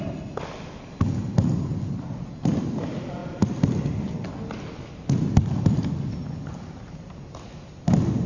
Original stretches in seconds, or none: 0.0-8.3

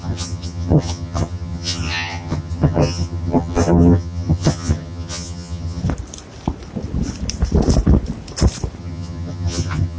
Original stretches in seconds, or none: 5.8-8.8

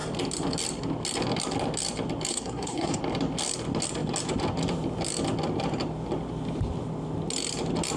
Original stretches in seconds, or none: 0.0-2.3; 3.0-8.0

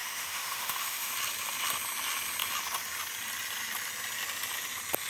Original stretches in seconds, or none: 1.1-5.1

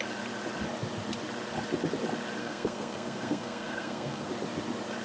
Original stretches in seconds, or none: 0.0-2.4; 4.3-5.0

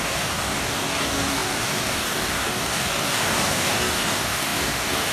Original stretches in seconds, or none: none

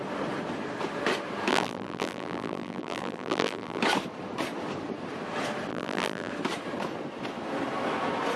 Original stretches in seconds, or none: 0.0-1.5; 3.8-5.7; 6.3-8.4